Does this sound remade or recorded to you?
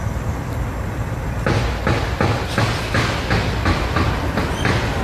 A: recorded